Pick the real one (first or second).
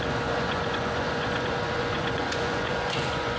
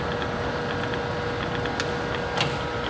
second